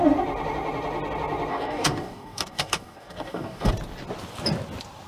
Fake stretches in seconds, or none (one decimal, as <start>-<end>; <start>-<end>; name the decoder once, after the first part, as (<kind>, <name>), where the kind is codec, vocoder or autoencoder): 1.5-3.7 (codec, DAC)